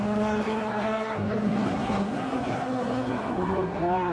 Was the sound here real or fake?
fake